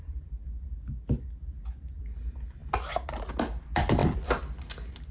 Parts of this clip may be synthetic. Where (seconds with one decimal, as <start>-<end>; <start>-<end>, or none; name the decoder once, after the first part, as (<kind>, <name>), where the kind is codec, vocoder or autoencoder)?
0.0-0.4 (vocoder, BigVGAN v2); 1.9-2.6; 3.6-5.1